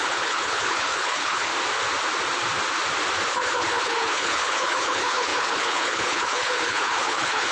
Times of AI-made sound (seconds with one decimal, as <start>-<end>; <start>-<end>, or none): 0.0-1.5; 3.3-7.5